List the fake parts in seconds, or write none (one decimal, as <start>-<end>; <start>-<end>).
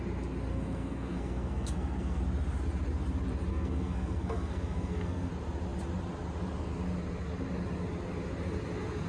0.5-2.2; 3.5-5.3